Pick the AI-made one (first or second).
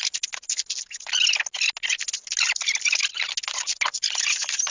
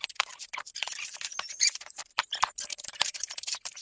second